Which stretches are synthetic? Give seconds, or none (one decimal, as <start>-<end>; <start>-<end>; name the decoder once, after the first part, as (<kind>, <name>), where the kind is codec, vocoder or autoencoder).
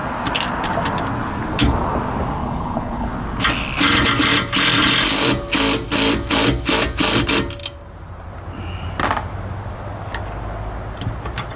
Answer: 2.4-3.1 (codec, HILCodec)